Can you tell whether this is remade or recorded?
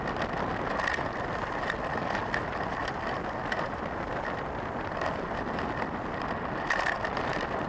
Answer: recorded